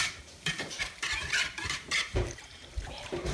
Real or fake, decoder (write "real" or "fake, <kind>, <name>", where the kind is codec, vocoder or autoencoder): fake, vocoder, BigVGAN v2